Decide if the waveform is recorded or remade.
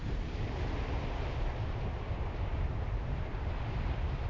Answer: recorded